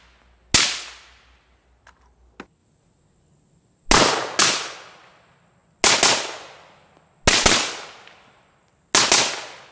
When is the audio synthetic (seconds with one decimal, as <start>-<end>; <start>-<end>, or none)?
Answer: none